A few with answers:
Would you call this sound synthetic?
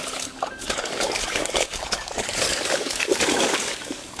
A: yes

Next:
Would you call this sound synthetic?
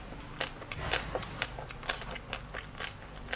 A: no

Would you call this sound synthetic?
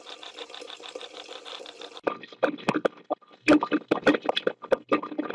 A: no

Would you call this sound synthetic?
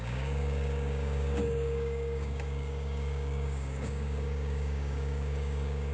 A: yes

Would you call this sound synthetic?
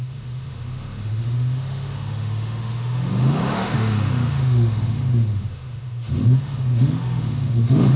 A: yes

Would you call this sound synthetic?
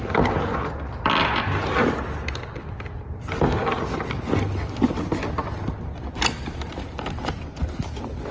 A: no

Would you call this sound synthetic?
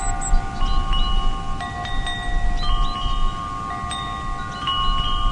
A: no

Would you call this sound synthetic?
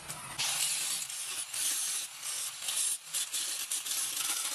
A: no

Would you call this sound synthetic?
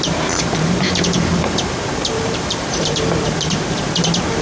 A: yes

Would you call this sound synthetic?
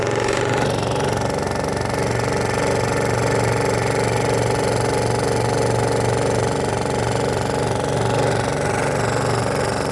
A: no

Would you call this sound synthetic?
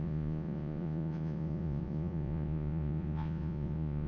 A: yes